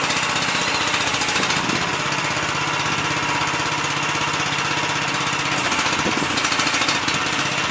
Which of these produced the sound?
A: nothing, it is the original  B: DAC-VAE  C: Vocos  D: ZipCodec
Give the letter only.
A